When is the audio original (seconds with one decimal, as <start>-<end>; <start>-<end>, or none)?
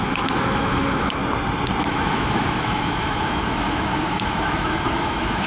1.2-1.8